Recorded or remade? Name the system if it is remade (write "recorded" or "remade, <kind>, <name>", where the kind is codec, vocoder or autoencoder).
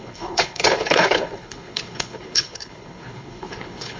remade, codec, HILCodec